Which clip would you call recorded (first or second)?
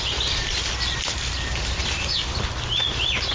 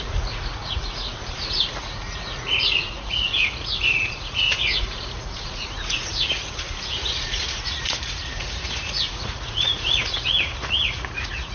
first